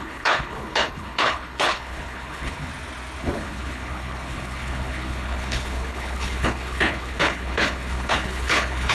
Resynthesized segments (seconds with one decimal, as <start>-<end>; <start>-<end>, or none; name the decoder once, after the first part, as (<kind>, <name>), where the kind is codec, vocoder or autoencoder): 0.0-2.7 (codec, HILCodec); 3.2-8.9